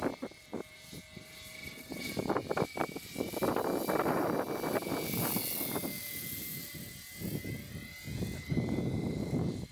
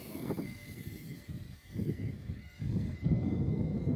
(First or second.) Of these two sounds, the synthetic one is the second